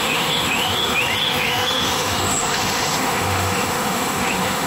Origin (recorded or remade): remade